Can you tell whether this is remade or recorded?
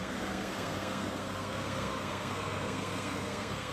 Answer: remade